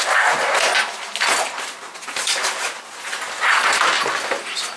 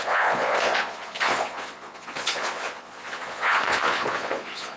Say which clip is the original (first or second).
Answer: first